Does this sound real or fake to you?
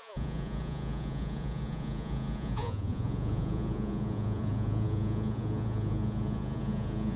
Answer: fake